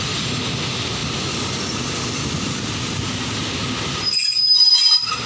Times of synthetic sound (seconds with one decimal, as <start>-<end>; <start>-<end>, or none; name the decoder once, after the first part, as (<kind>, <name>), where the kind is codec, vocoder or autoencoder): none